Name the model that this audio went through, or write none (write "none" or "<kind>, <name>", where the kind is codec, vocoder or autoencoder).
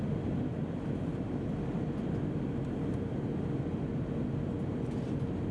none